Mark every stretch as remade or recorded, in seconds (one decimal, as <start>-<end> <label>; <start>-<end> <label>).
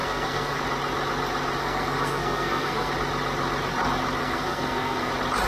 0.0-0.6 remade; 0.6-1.6 recorded; 1.6-2.9 remade; 2.9-4.2 recorded; 4.2-5.1 remade; 5.1-5.5 recorded